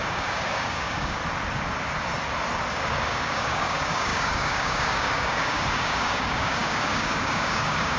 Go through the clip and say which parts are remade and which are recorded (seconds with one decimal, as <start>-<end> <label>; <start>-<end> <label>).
0.0-1.2 remade; 1.2-2.7 recorded; 2.7-8.0 remade